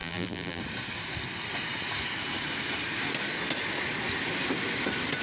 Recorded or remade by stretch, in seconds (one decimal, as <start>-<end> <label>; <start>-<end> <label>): 0.0-0.6 remade; 0.6-5.2 recorded